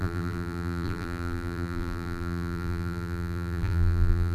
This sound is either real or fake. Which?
fake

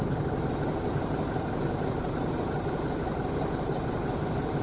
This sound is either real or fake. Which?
fake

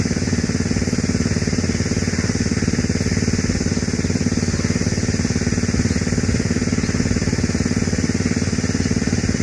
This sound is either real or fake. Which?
real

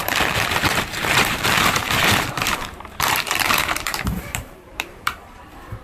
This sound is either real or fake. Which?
fake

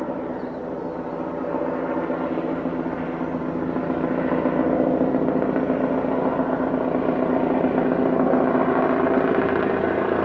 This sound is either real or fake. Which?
real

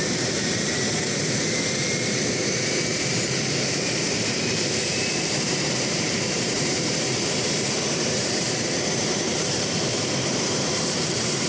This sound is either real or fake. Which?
fake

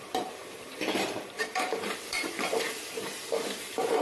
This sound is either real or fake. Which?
fake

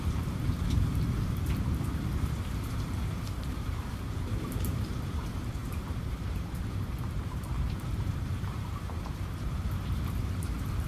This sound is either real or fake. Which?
fake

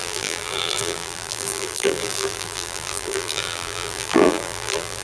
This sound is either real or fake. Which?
fake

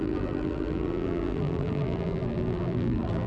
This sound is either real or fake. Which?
fake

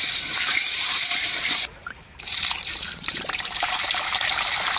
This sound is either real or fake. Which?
fake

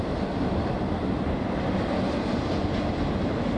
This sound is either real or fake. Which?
real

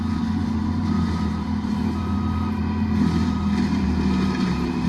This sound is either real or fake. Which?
fake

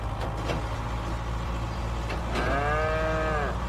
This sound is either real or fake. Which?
real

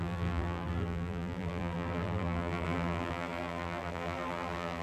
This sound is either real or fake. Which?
fake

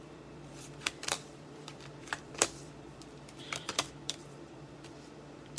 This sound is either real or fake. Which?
fake